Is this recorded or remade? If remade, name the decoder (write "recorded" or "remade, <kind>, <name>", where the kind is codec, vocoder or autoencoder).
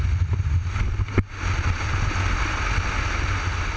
recorded